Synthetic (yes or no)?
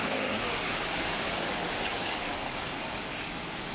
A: yes